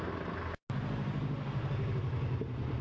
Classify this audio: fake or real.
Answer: real